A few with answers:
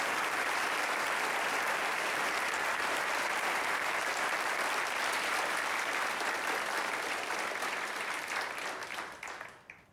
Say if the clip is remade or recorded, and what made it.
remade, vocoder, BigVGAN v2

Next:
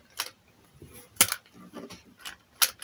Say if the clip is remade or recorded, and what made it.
recorded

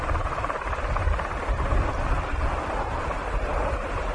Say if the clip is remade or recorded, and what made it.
remade, vocoder, BigVGAN v2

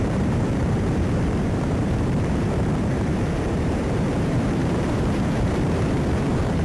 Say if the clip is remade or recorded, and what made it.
remade, vocoder, BigVGAN v2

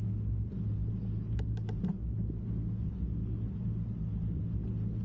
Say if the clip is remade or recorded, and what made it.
recorded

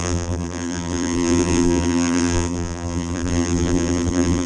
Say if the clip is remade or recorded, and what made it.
remade, vocoder, BigVGAN v2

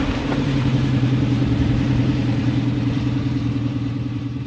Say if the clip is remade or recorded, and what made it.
remade, vocoder, BigVGAN v2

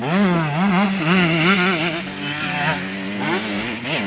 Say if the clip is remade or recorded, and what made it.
recorded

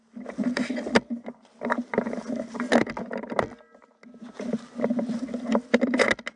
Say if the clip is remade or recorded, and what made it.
recorded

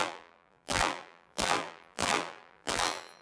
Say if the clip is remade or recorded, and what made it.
remade, vocoder, BigVGAN v2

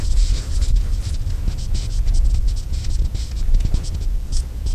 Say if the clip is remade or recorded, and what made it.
recorded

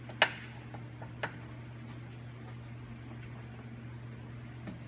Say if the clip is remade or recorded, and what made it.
recorded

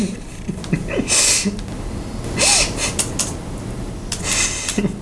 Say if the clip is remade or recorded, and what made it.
recorded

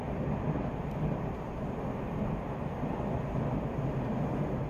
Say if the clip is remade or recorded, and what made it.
recorded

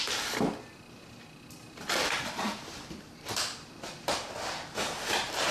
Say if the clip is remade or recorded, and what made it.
remade, vocoder, BigVGAN v2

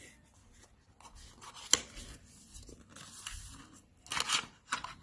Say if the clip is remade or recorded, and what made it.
recorded